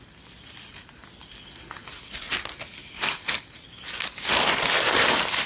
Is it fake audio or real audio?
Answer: real